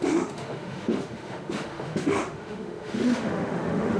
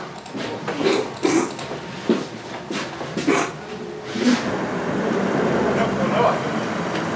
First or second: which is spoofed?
first